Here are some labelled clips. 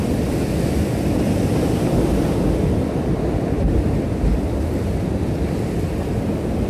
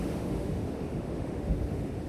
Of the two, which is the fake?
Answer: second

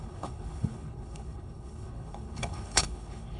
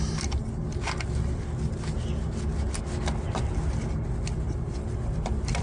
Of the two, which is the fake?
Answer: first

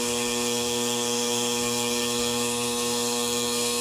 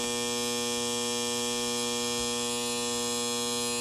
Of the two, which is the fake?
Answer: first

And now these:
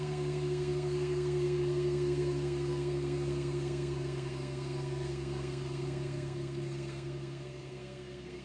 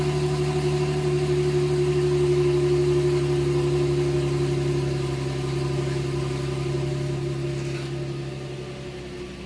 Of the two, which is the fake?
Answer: first